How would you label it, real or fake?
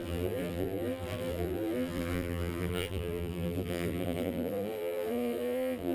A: fake